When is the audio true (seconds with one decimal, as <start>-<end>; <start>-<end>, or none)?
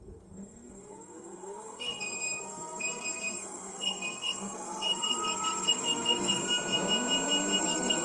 6.4-7.6